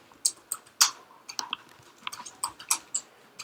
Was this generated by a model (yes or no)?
no